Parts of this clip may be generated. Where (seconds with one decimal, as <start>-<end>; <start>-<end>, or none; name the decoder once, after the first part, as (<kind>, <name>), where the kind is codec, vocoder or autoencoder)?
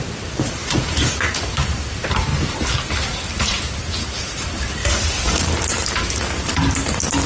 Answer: 0.6-1.4 (vocoder, Vocos); 4.8-5.4